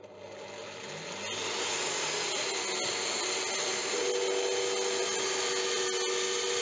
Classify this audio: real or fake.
real